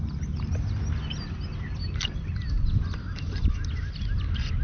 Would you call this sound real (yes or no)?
yes